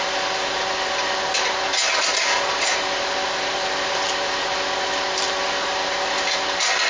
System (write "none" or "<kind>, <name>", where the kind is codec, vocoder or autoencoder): none